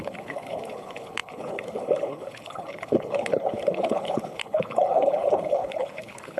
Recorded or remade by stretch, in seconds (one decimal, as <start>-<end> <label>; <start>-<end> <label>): 0.0-6.4 remade